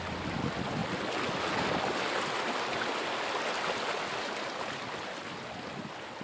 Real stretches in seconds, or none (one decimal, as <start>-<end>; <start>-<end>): 0.0-6.2